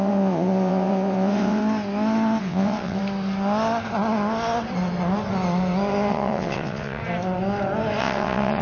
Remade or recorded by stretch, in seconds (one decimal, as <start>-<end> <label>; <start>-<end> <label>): 0.0-1.6 remade; 1.6-2.4 recorded; 2.4-3.0 remade; 3.0-6.1 recorded; 6.1-7.0 remade; 7.0-8.0 recorded; 8.0-8.6 remade